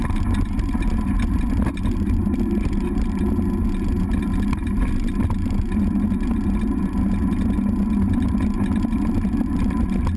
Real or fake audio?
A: real